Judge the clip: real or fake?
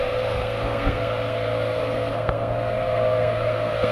fake